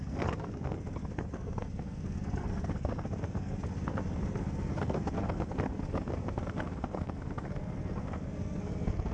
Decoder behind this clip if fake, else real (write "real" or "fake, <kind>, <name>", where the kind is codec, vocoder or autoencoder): fake, codec, SNAC